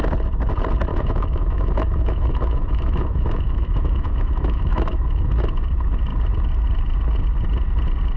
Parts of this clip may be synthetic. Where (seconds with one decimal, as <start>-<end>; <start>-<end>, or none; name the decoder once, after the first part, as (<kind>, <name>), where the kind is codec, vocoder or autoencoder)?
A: 0.9-5.3 (autoencoder, DAC-VAE)